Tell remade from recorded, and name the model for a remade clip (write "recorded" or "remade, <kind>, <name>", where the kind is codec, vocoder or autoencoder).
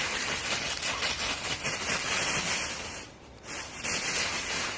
recorded